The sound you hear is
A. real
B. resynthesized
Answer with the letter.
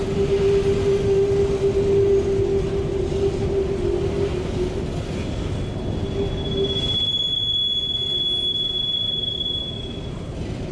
A